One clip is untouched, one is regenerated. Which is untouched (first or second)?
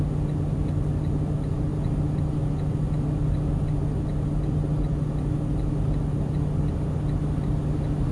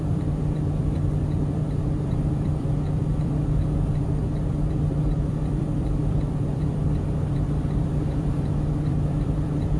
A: first